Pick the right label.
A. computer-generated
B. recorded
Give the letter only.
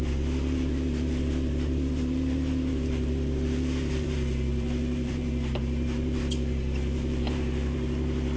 A